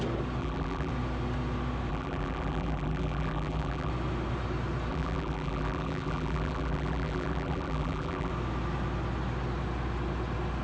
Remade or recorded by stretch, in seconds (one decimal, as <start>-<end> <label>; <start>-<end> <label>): 0.0-0.4 recorded; 0.4-0.9 remade; 0.9-1.9 recorded; 1.9-3.9 remade; 3.9-4.9 recorded; 4.9-8.3 remade; 8.3-10.6 recorded

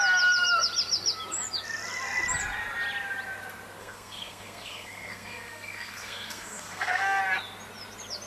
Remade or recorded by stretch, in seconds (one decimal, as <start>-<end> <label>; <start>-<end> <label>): 0.0-3.8 recorded; 3.8-7.2 remade; 7.2-8.3 recorded

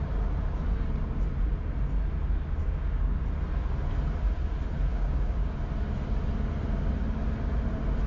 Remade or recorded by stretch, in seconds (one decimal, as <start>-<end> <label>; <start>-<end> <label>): 0.0-2.6 recorded; 2.6-3.2 remade; 3.2-4.9 recorded; 4.9-5.5 remade; 5.5-8.1 recorded

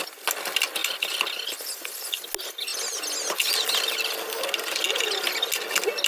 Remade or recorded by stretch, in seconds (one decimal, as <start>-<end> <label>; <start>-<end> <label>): 0.0-6.1 recorded

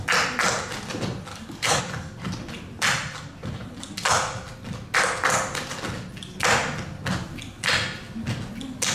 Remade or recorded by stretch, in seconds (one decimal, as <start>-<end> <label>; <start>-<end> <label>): 0.0-1.3 recorded; 1.3-1.8 remade; 1.8-8.9 recorded

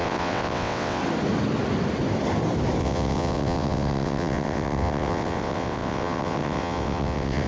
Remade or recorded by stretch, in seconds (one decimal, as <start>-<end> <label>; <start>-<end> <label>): 0.0-1.0 remade; 1.0-2.8 recorded; 2.8-7.5 remade